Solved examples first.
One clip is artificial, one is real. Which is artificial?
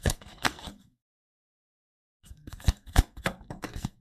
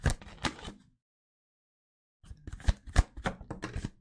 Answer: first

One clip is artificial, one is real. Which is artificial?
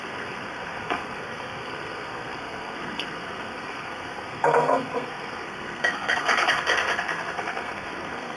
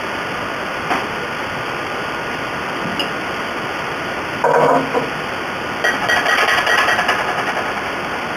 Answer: first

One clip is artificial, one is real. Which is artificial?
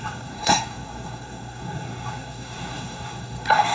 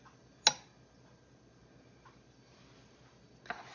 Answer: first